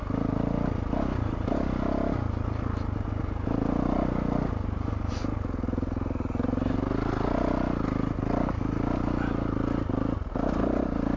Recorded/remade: recorded